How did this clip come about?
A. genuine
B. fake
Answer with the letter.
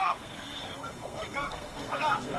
B